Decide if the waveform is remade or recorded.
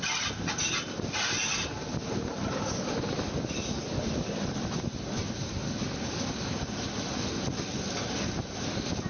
recorded